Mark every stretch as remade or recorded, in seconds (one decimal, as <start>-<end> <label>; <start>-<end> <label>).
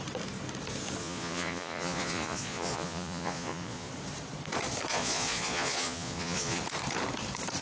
0.0-1.0 recorded; 1.0-3.9 remade; 3.9-4.9 recorded; 4.9-6.6 remade; 6.6-7.6 recorded